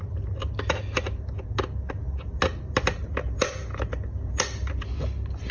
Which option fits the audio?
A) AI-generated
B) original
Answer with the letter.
B